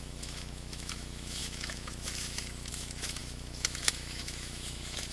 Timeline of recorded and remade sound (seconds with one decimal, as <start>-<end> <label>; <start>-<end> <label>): 0.0-5.1 remade